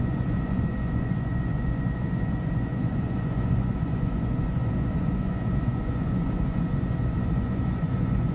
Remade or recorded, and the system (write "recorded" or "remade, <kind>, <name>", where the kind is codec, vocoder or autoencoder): remade, vocoder, Vocos